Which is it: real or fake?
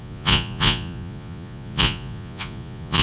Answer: fake